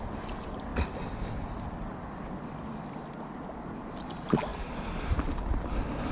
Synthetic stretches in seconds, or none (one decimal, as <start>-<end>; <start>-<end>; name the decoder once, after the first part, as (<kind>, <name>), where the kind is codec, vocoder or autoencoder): none

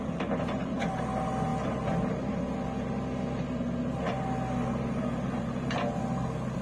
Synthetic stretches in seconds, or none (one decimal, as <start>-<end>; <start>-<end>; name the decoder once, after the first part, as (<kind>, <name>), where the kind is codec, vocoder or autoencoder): none

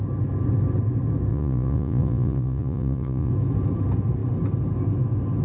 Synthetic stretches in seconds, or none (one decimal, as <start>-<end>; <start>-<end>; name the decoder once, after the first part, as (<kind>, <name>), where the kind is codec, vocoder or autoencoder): 1.3-3.3 (vocoder, Vocos)

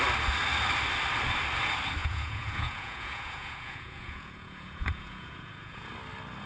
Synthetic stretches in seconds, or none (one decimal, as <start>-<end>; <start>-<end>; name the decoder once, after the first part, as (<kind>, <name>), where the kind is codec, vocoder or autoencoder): 2.0-5.9 (vocoder, Vocos)

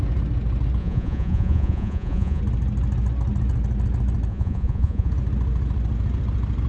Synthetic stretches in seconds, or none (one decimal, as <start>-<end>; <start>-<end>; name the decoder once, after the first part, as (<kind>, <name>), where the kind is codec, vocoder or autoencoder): 0.8-2.4 (vocoder, Vocos); 4.3-5.1

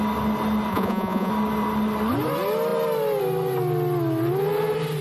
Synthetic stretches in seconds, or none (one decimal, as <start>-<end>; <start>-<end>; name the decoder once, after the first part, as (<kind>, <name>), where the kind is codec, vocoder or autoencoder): 0.7-1.3 (vocoder, Vocos)

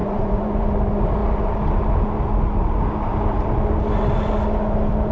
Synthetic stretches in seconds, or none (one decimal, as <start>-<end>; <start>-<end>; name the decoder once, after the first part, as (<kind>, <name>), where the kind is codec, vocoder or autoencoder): 0.0-0.7 (vocoder, Vocos)

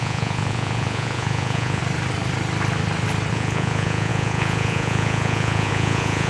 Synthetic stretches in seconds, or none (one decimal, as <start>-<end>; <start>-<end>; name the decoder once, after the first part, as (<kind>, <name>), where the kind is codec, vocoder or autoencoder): 0.0-1.8 (vocoder, Vocos); 3.3-6.3